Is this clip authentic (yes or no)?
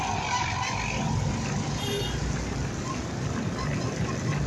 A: yes